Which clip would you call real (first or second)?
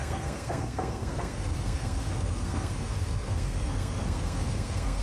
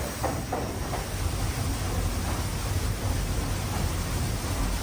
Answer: second